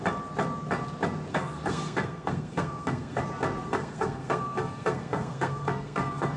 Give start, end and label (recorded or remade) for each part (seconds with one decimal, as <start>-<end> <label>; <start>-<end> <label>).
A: 0.0-1.3 recorded; 1.3-3.2 remade; 3.2-3.6 recorded; 3.6-6.4 remade